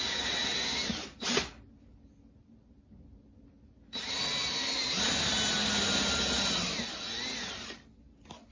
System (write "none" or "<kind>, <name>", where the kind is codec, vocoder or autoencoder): none